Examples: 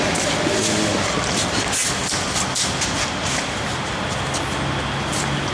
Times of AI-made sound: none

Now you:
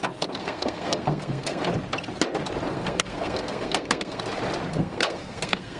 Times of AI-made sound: 0.4-1.6 (codec, SNAC); 2.7-4.2; 4.7-5.8

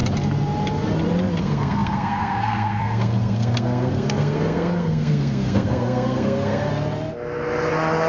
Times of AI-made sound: 1.4-6.7 (codec, SNAC)